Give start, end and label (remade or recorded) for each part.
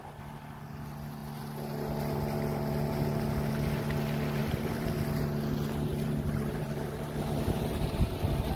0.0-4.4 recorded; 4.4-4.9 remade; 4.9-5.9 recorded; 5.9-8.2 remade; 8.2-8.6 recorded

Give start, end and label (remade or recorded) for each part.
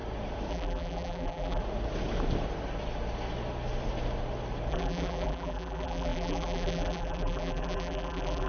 0.0-0.5 recorded; 0.5-1.6 remade; 1.6-4.7 recorded; 4.7-8.5 remade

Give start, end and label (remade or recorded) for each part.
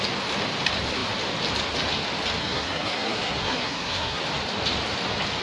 0.0-2.4 recorded; 2.4-4.2 remade; 4.2-5.4 recorded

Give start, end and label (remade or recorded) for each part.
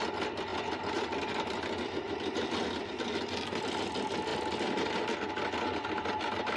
0.0-0.5 recorded; 0.5-1.3 remade; 1.3-6.6 recorded